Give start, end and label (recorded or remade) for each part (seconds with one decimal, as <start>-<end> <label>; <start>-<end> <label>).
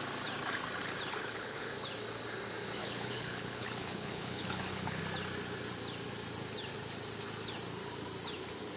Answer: 0.0-1.2 recorded; 1.2-1.7 remade; 1.7-2.8 recorded; 2.8-5.0 remade; 5.0-8.8 recorded